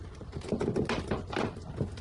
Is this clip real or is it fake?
real